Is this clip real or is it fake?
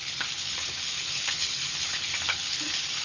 fake